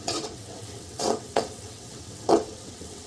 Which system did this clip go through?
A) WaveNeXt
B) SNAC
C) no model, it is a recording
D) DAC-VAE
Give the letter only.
A